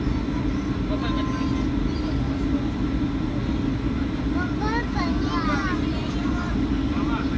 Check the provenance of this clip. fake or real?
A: real